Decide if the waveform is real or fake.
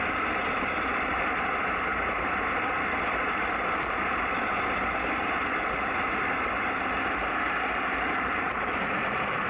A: real